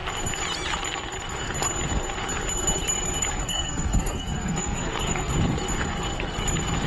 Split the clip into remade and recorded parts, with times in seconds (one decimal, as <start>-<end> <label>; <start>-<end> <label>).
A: 0.0-3.3 recorded; 3.3-5.3 remade; 5.3-6.9 recorded